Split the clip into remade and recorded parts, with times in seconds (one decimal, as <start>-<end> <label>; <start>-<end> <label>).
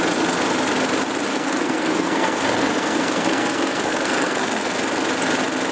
0.0-1.3 recorded; 1.3-4.7 remade; 4.7-5.7 recorded